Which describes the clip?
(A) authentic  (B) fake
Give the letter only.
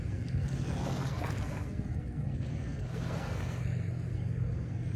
B